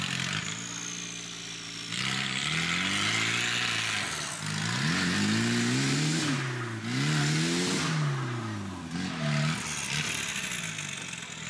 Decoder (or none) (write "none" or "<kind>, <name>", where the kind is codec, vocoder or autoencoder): none